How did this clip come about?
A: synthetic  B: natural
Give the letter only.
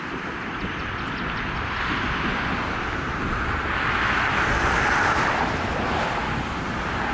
B